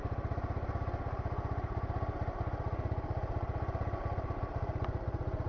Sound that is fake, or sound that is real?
real